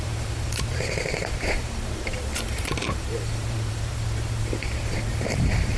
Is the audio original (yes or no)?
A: no